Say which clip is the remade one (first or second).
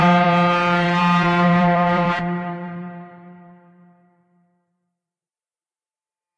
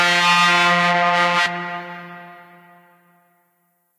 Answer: first